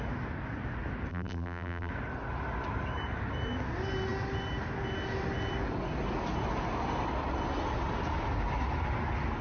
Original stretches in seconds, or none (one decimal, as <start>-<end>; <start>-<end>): 0.0-1.1; 1.9-9.4